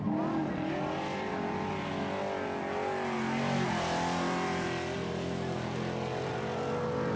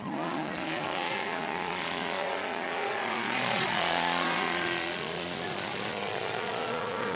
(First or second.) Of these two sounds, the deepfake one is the second